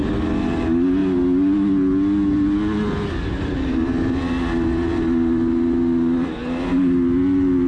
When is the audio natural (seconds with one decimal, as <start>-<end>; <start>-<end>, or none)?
0.0-7.7